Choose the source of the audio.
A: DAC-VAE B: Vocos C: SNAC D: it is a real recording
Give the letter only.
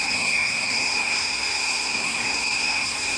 C